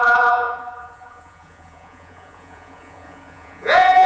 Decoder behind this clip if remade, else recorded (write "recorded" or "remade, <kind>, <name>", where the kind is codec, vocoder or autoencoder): remade, vocoder, Vocos